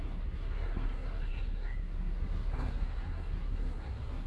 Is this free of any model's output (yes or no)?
no